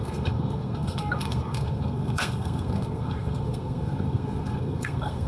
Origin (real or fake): fake